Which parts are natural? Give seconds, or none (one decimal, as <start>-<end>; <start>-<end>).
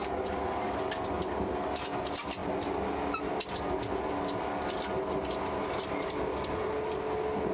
0.0-7.5